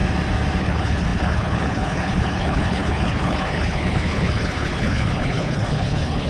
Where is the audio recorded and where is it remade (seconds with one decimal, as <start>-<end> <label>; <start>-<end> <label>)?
0.0-0.6 recorded; 0.6-6.3 remade